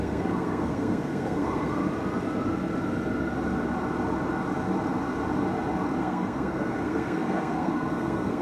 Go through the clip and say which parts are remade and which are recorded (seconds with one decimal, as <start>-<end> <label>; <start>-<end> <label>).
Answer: 0.0-1.8 remade; 1.8-6.0 recorded; 6.0-8.4 remade